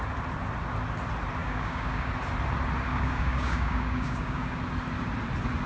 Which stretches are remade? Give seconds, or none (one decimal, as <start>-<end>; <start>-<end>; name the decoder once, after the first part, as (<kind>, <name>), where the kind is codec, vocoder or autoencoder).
1.4-2.1 (codec, DAC); 2.9-4.6